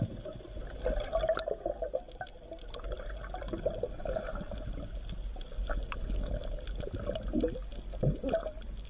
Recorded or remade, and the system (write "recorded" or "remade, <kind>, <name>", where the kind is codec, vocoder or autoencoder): recorded